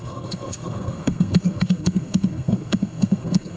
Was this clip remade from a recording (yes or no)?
yes